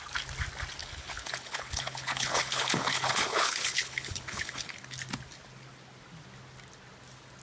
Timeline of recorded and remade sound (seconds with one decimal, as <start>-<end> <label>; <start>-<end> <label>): 0.0-0.8 recorded; 0.8-4.8 remade; 4.8-7.4 recorded